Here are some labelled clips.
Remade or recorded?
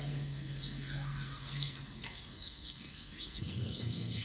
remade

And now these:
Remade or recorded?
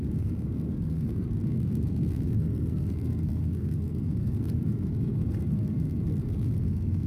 remade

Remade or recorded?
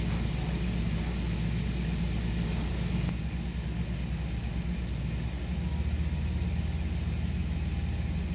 recorded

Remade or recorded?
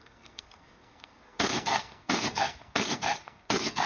remade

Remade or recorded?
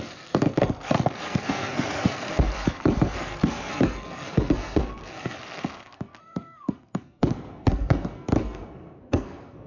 remade